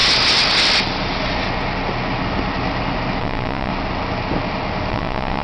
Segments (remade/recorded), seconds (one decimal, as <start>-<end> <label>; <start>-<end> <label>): 0.0-3.2 recorded; 3.2-3.7 remade; 3.7-4.9 recorded; 4.9-5.4 remade